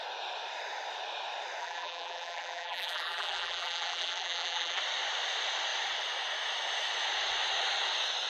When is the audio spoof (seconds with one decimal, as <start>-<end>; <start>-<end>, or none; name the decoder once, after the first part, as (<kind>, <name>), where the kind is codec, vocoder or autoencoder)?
1.6-4.8 (vocoder, BigVGAN v2)